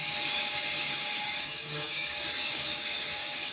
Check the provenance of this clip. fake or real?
fake